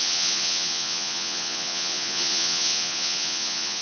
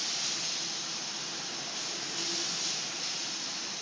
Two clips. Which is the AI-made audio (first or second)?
first